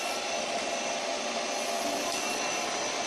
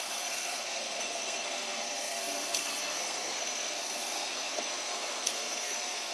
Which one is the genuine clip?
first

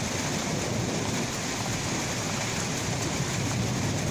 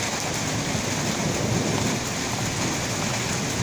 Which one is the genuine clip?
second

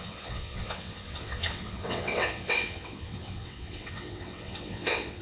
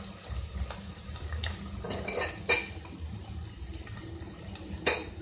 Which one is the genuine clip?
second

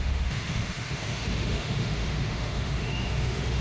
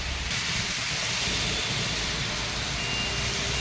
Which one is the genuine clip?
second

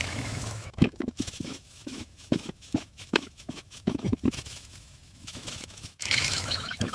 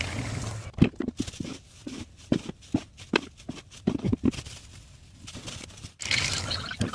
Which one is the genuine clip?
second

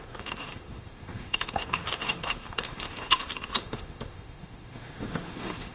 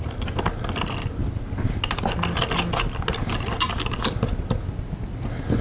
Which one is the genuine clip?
second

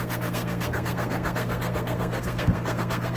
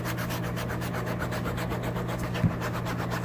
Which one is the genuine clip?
second